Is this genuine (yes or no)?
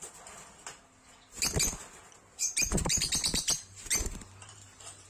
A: yes